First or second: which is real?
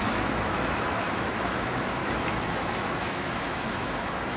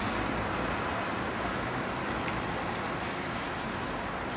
second